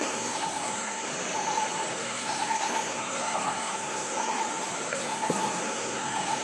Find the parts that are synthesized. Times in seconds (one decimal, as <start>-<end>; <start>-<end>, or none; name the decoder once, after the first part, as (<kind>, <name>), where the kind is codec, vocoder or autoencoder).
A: 0.0-1.1 (codec, SNAC); 1.9-4.4; 4.9-6.4